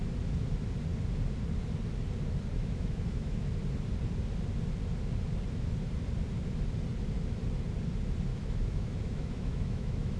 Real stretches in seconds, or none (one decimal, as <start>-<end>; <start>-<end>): 0.0-2.5; 3.5-8.3